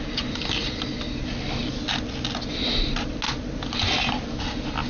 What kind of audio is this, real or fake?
real